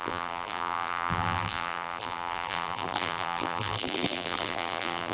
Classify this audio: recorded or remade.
remade